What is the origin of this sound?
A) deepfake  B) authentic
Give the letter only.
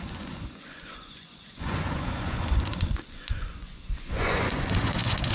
A